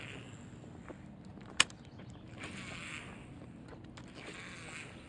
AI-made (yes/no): no